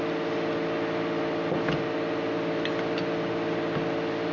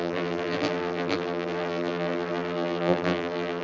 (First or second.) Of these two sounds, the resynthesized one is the second